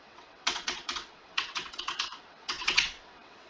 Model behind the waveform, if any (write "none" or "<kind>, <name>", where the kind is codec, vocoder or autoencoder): vocoder, WaveNeXt